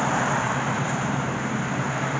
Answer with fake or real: fake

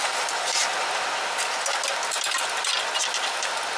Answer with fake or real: real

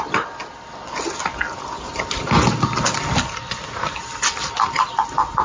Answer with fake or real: real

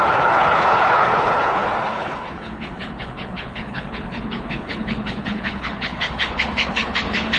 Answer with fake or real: fake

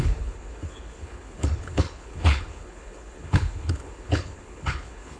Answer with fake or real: fake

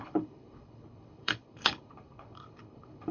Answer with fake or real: fake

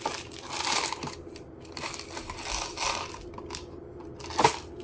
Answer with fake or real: real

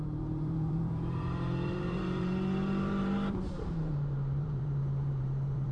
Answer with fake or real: fake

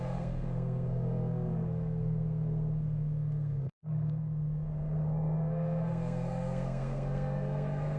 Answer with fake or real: fake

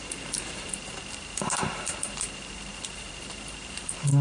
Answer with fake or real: fake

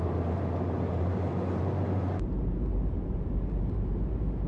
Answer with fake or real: fake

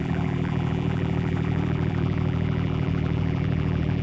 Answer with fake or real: fake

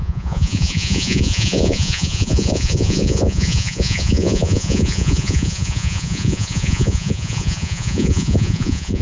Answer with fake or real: fake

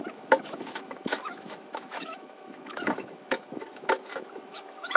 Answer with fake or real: fake